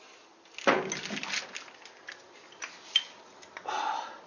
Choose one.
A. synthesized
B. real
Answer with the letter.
B